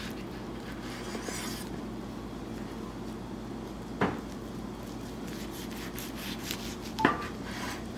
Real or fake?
real